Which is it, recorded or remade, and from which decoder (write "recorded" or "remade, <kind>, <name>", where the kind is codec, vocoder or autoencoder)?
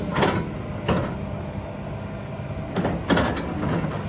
recorded